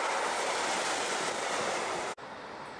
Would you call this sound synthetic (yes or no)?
no